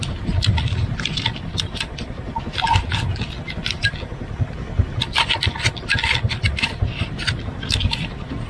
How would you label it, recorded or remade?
recorded